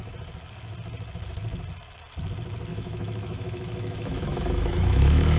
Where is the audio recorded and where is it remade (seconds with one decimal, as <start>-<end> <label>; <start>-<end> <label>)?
0.0-2.7 recorded; 2.7-5.4 remade